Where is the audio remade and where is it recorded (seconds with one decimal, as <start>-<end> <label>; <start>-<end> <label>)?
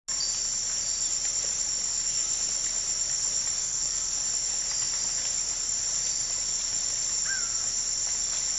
0.0-3.6 recorded; 3.6-4.1 remade; 4.1-8.6 recorded